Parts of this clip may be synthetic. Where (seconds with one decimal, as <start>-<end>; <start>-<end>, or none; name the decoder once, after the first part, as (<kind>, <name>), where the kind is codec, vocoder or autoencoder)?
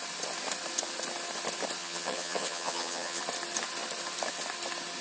1.8-3.2 (vocoder, HiFi-GAN)